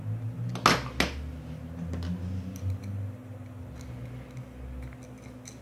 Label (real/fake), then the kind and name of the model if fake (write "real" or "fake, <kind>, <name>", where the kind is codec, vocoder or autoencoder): real